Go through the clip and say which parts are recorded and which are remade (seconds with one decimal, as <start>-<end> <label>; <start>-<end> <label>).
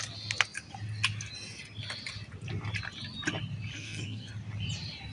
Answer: 0.0-3.7 recorded; 3.7-4.3 remade; 4.3-5.1 recorded